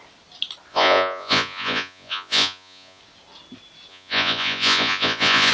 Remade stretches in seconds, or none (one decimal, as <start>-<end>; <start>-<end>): 0.7-3.0; 3.9-5.5